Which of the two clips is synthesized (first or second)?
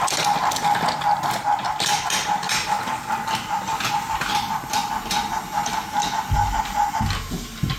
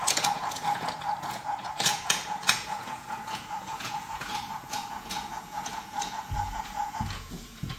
second